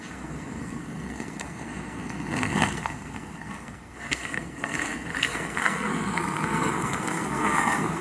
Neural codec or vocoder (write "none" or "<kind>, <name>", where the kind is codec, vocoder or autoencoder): codec, SNAC